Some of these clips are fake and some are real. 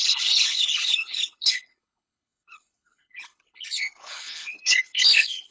fake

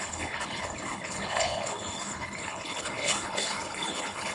fake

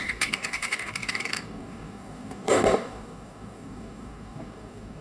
fake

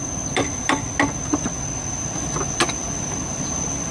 real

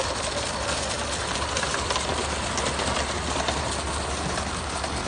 real